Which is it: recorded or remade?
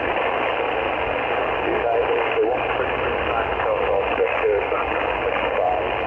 recorded